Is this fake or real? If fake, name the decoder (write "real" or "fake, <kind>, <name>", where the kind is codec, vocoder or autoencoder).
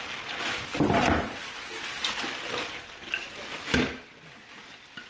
real